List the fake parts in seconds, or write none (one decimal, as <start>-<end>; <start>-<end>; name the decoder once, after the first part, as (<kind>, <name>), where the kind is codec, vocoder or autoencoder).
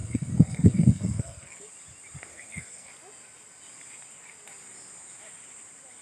0.0-1.7 (codec, SNAC); 2.3-2.9